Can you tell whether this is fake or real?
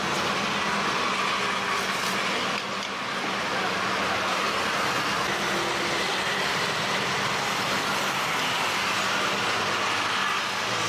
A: real